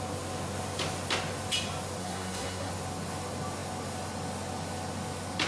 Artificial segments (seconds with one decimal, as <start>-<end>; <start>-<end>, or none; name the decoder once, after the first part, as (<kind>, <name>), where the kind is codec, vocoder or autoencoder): 2.0-2.7 (codec, SNAC)